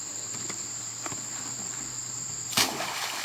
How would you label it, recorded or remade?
recorded